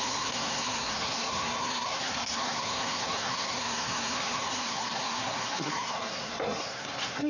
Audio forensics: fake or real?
fake